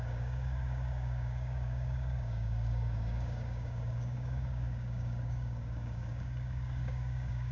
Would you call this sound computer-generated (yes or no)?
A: yes